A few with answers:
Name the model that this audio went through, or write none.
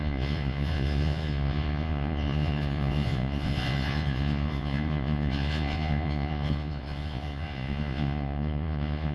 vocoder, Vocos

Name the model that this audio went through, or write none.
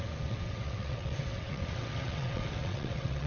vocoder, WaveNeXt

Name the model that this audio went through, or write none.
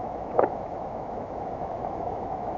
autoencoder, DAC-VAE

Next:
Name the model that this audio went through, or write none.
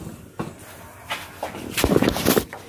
none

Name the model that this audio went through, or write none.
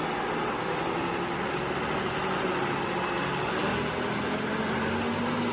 none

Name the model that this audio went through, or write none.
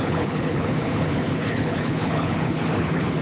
codec, HILCodec